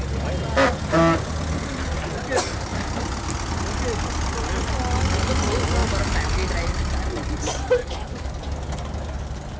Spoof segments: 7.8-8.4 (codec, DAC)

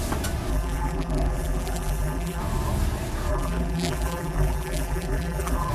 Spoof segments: 0.5-2.4 (vocoder, BigVGAN v2); 3.3-5.7

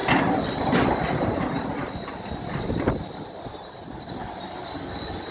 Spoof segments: none

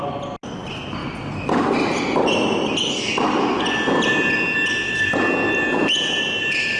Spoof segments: none

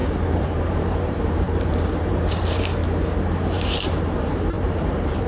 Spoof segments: 0.0-2.8 (vocoder, BigVGAN v2); 3.3-5.3

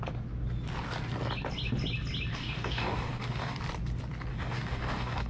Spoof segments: 2.3-3.6 (codec, DAC); 4.3-5.3

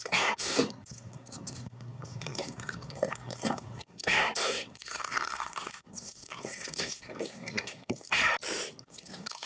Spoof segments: 0.0-8.2 (codec, SNAC); 8.8-9.5